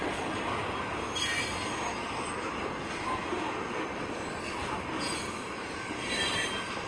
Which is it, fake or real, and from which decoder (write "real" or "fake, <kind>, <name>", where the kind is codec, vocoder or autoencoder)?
real